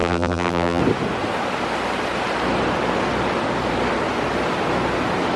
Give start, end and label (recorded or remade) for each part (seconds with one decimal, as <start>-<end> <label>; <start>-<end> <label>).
0.0-0.8 remade; 0.8-5.4 recorded